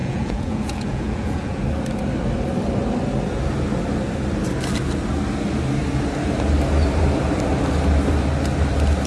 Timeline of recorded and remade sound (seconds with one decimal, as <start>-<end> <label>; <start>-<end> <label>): 0.0-1.6 remade; 1.6-9.1 recorded